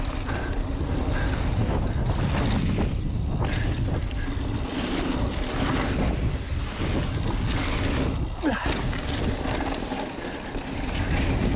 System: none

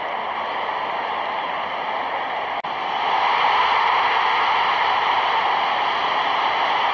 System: none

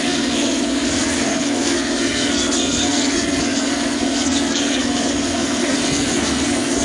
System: codec, SNAC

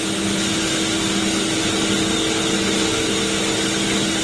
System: none